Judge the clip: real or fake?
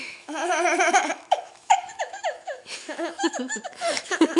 fake